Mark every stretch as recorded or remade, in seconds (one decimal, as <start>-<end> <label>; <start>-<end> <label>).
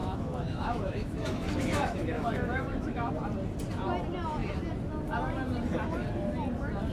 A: 0.0-3.1 remade; 3.1-6.9 recorded